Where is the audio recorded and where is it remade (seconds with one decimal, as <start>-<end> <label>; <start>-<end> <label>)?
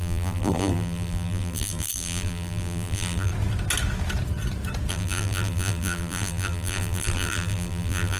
0.0-3.3 remade; 3.3-4.9 recorded; 4.9-8.2 remade